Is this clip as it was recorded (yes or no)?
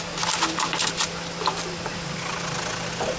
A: yes